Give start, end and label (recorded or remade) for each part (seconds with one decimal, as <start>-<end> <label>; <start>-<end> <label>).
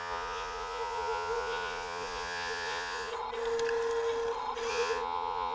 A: 0.0-3.1 remade; 3.1-4.7 recorded; 4.7-5.5 remade